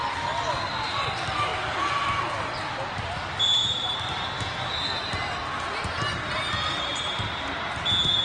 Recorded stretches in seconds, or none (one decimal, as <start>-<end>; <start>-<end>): 0.0-1.5; 2.2-3.6; 4.1-8.2